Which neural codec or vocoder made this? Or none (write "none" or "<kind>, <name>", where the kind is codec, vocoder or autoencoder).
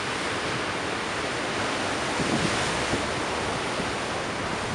none